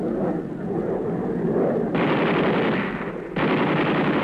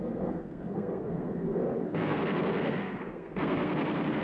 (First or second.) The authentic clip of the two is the first